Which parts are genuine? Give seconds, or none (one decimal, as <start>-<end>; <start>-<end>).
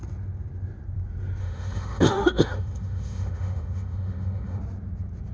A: 0.0-1.4; 4.6-5.3